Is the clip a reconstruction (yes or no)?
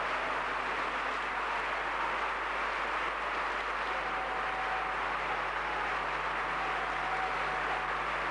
no